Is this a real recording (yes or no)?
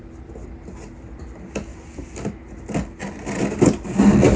yes